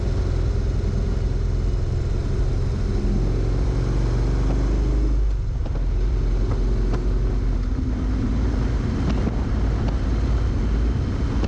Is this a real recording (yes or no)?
yes